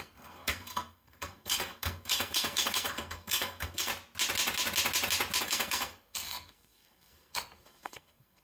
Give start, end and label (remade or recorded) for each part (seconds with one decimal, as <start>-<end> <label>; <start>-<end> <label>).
0.0-3.9 remade; 3.9-5.4 recorded; 5.4-8.4 remade